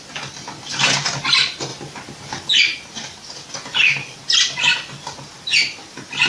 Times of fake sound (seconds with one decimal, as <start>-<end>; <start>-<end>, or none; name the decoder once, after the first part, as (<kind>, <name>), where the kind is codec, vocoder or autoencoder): none